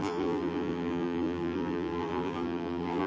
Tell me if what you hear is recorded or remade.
remade